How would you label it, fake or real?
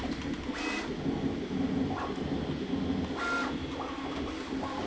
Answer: real